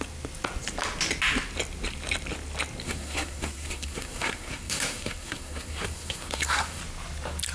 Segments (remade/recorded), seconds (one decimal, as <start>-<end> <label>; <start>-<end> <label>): 0.0-2.8 recorded; 2.8-6.8 remade; 6.8-7.5 recorded